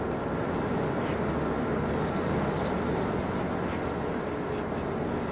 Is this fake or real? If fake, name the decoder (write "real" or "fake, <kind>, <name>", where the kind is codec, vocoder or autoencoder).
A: real